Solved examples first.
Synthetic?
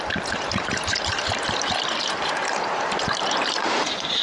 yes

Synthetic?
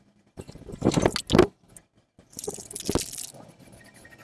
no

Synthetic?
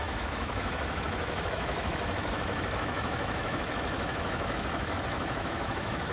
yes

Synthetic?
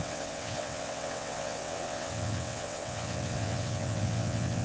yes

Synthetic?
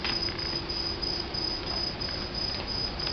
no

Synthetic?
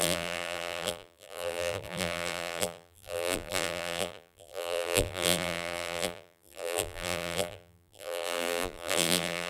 yes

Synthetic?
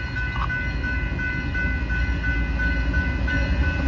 no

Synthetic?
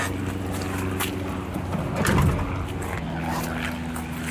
no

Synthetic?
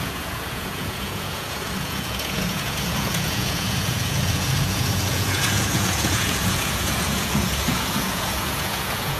yes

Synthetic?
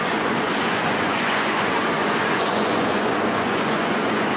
yes